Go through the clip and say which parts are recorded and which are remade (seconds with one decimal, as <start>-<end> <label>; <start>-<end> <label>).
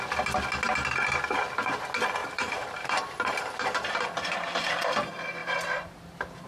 0.0-2.2 recorded; 2.2-4.7 remade; 4.7-5.4 recorded; 5.4-6.5 remade